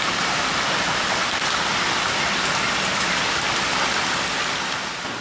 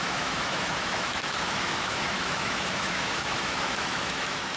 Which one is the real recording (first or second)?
first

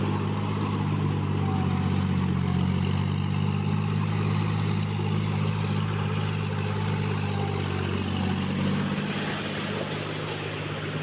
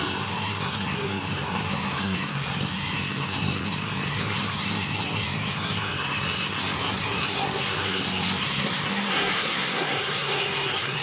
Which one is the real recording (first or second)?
first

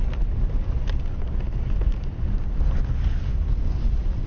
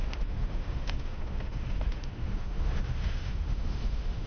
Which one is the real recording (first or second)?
first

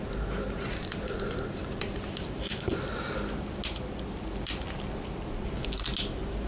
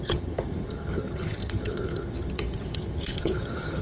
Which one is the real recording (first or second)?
first